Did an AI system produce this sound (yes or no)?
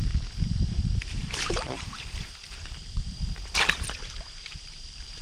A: yes